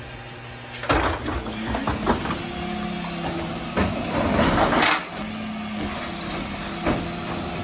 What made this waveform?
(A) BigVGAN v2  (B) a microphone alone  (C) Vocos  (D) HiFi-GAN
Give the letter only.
B